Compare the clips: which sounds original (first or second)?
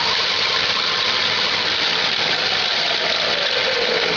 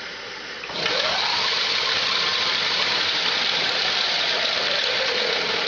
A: first